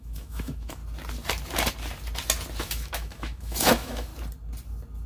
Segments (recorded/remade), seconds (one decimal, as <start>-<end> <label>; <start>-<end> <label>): 0.0-0.8 remade; 0.8-2.6 recorded; 2.6-4.1 remade; 4.1-5.1 recorded